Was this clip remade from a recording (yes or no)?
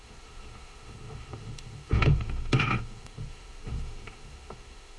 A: yes